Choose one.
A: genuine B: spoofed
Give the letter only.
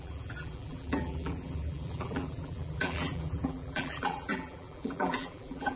B